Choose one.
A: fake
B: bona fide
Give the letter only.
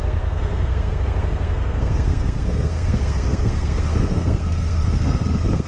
A